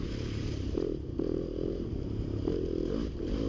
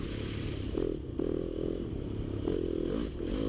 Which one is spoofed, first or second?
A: first